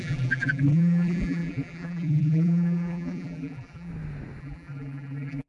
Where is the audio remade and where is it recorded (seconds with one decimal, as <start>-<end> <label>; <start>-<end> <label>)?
0.0-3.9 remade; 3.9-4.4 recorded; 4.4-5.5 remade